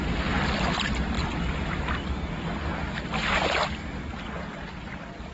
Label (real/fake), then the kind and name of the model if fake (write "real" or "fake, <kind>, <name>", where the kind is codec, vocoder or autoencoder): real